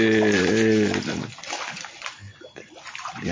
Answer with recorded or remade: recorded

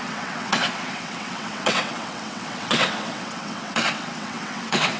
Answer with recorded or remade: remade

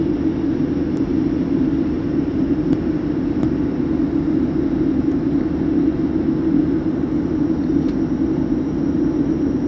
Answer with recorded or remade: recorded